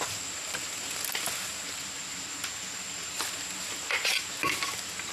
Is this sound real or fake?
real